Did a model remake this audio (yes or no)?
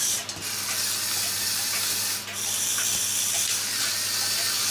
no